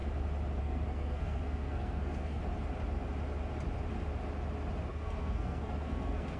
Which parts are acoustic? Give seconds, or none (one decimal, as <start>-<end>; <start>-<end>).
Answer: 0.0-0.6; 2.4-4.9